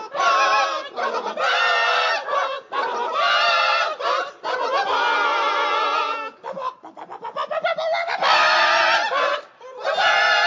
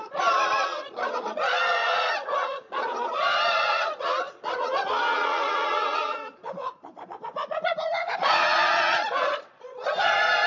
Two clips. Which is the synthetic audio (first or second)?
second